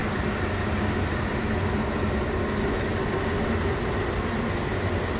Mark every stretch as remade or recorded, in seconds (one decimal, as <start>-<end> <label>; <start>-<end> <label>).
0.0-5.2 recorded

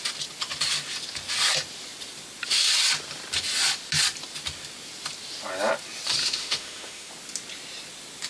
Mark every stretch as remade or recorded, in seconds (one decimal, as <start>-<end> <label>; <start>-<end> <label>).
0.0-6.2 recorded; 6.2-7.1 remade; 7.1-8.3 recorded

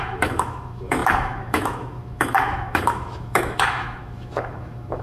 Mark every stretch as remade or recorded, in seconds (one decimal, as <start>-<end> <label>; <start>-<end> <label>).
0.0-5.0 remade

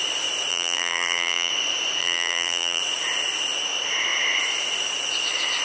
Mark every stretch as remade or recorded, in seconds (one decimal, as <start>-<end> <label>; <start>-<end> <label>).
0.0-0.5 recorded; 0.5-1.5 remade; 1.5-2.0 recorded; 2.0-2.8 remade; 2.8-5.6 recorded

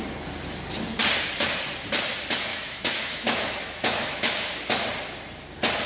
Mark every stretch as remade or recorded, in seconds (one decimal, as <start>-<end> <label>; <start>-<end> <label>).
0.0-2.5 recorded; 2.5-4.5 remade; 4.5-5.9 recorded

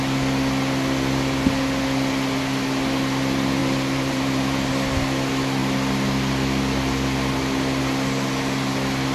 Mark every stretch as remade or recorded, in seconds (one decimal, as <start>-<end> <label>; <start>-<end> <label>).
0.0-3.6 recorded; 3.6-4.7 remade; 4.7-9.1 recorded